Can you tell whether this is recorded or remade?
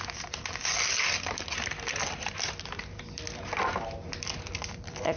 recorded